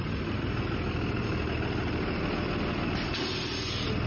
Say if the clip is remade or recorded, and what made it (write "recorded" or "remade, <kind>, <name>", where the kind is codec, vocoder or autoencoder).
recorded